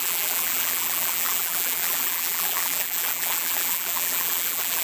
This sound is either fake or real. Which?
fake